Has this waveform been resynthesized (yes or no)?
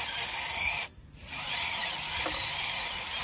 no